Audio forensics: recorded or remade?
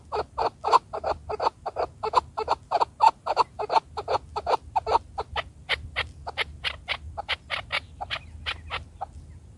recorded